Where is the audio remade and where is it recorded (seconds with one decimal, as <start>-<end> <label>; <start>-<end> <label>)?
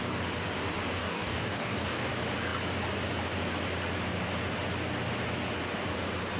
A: 0.0-1.0 recorded; 1.0-2.1 remade; 2.1-6.4 recorded